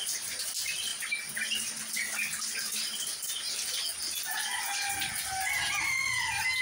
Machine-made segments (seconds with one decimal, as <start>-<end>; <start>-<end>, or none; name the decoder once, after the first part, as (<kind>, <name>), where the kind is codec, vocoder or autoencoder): none